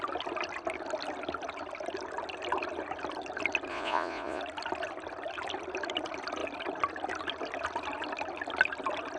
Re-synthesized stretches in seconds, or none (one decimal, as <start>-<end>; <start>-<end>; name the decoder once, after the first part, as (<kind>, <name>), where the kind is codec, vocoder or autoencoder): 3.7-4.4 (vocoder, Vocos)